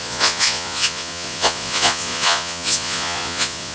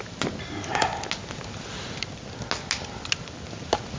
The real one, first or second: second